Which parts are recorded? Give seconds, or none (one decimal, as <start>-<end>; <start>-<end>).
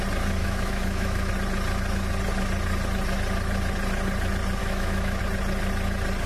0.0-0.4; 1.3-4.6; 5.2-6.3